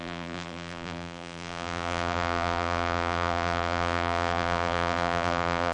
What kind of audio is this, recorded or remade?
remade